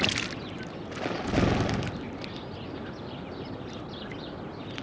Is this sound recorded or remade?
recorded